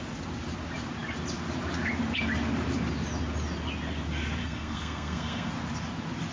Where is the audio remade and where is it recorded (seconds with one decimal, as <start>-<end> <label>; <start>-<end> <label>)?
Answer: 0.0-4.4 recorded; 4.4-5.5 remade; 5.5-6.3 recorded